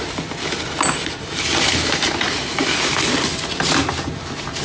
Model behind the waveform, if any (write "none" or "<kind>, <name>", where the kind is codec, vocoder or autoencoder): none